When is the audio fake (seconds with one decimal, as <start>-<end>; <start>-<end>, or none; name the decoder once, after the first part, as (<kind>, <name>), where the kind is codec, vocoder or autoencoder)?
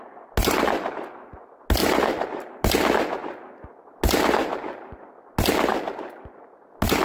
1.8-2.5 (vocoder, BigVGAN v2); 4.4-5.1; 5.7-6.4